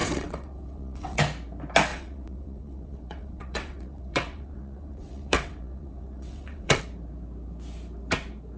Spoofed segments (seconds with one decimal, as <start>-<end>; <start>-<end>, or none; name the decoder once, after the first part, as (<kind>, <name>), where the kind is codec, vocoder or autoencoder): 0.0-1.2 (vocoder, WaveNeXt); 1.9-6.8